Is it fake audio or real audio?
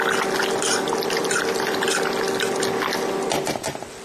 real